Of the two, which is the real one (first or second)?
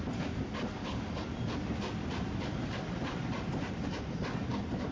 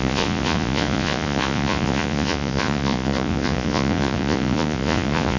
first